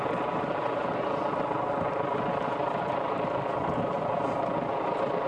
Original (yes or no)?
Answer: yes